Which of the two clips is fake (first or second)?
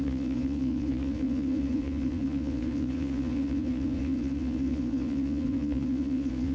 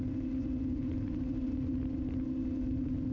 first